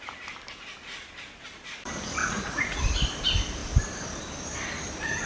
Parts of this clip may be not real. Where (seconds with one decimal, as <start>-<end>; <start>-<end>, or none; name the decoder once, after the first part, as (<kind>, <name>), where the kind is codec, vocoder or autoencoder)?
2.2-2.8 (vocoder, Vocos)